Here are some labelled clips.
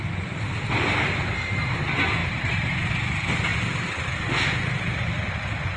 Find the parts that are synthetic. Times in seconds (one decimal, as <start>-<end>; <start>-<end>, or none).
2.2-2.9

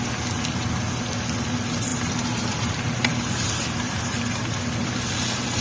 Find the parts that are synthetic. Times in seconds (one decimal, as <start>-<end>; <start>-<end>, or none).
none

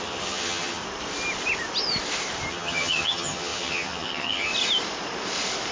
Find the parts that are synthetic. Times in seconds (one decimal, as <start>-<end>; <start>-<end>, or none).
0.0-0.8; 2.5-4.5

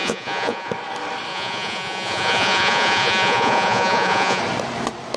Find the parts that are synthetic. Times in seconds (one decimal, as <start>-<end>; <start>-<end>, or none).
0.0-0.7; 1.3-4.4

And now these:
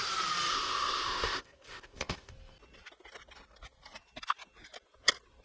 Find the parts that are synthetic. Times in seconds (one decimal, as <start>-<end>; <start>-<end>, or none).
0.5-2.3